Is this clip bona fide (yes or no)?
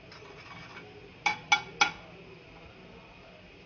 yes